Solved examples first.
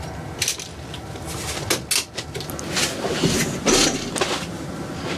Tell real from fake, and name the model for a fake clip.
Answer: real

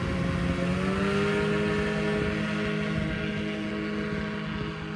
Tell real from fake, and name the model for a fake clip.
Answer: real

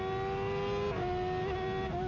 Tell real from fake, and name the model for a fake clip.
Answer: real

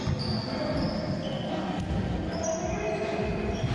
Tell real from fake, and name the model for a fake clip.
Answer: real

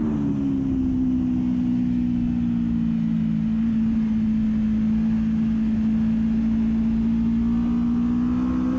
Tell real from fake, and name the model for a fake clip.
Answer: real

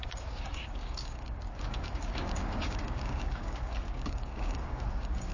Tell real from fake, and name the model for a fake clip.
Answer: fake, codec, DAC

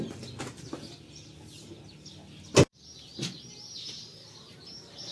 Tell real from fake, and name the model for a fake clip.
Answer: real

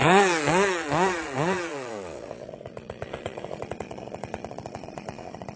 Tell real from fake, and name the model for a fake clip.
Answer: fake, vocoder, Vocos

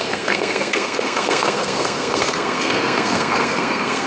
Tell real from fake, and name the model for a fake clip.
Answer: fake, codec, SNAC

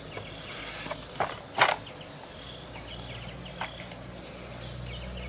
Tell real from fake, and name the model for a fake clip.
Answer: real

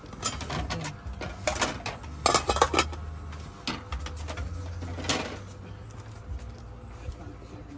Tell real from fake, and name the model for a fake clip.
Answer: real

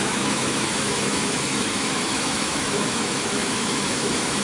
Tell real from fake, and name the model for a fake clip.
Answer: fake, autoencoder, DAC-VAE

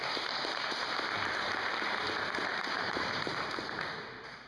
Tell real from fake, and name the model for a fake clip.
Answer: fake, vocoder, BigVGAN v2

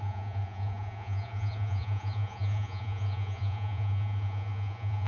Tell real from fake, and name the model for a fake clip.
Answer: fake, vocoder, Vocos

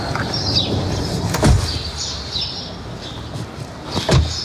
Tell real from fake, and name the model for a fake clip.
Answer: real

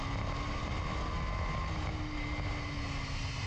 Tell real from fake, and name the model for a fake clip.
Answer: real